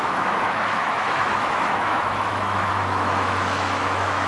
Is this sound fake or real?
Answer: fake